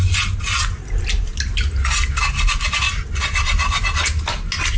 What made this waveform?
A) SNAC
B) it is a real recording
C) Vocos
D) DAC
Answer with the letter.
B